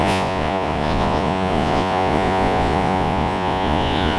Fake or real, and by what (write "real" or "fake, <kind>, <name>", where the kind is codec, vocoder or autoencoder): fake, vocoder, Vocos